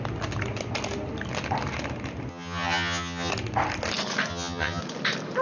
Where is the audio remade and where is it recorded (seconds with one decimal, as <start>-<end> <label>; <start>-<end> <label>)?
0.0-2.3 recorded; 2.3-3.3 remade; 3.3-4.3 recorded; 4.3-4.8 remade; 4.8-5.4 recorded